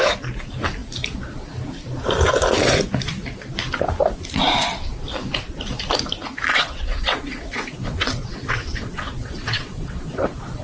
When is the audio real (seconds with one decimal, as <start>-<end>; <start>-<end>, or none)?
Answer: 0.0-6.5